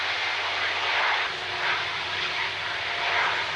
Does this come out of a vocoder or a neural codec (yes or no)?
no